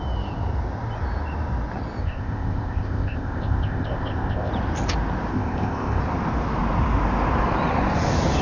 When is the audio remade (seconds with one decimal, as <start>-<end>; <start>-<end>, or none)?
2.0-4.5; 5.3-6.0